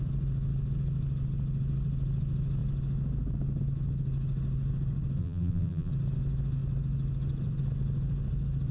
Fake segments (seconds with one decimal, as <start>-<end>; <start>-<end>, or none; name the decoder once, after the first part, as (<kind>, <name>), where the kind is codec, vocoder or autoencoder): 5.2-5.9 (vocoder, BigVGAN v2)